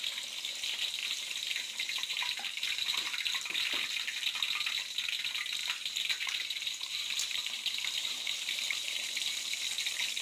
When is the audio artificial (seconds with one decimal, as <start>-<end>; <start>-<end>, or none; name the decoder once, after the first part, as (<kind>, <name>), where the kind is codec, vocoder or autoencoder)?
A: 1.0-3.7 (vocoder, BigVGAN v2); 5.6-9.6

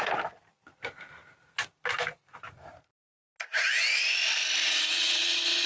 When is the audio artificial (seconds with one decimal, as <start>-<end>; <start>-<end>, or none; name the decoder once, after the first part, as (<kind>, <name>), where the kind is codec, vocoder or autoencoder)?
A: 4.6-5.7 (vocoder, WaveNeXt)